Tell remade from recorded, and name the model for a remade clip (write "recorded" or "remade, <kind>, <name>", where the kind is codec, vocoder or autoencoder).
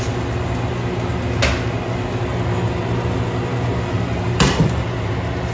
recorded